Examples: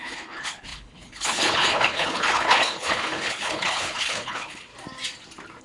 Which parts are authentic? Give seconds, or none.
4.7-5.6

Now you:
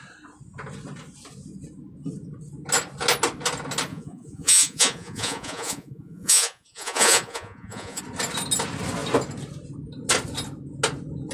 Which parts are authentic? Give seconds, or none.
0.0-3.9; 8.0-11.3

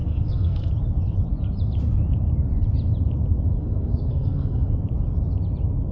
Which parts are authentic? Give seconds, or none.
0.7-3.6; 4.7-5.9

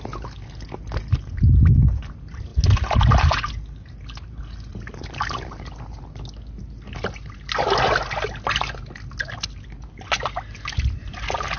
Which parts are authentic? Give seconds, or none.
0.0-4.7; 6.0-11.6

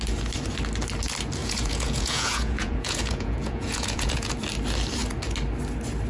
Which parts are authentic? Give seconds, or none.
0.0-1.4; 4.3-6.1